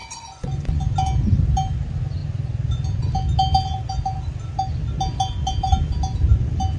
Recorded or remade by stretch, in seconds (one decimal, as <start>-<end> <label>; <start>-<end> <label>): 0.0-0.8 remade; 0.8-6.8 recorded